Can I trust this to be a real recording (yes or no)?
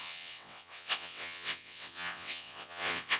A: no